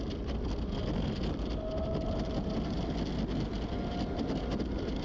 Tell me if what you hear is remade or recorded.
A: recorded